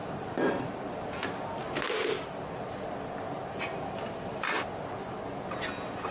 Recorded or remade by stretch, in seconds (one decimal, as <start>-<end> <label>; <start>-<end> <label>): 0.0-0.5 remade; 0.5-6.1 recorded